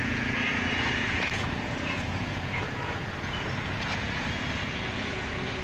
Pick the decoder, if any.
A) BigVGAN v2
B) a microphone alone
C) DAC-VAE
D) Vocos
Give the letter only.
D